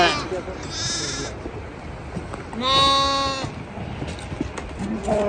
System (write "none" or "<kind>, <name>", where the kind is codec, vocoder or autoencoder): none